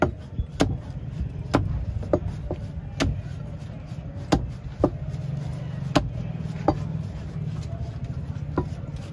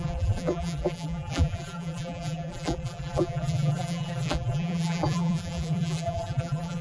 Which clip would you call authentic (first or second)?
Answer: first